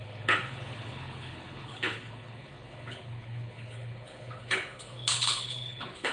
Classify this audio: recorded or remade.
remade